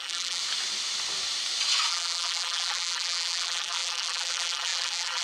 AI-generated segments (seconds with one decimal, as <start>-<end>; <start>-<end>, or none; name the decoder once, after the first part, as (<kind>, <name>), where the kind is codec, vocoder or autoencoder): 0.0-0.4 (vocoder, BigVGAN v2); 1.9-5.2